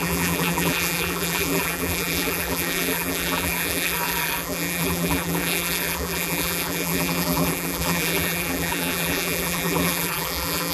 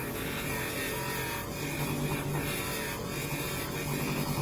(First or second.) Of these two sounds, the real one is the second